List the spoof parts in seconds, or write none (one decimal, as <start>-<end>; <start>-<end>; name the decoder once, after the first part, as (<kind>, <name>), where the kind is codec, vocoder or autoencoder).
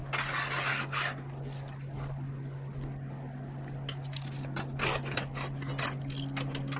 none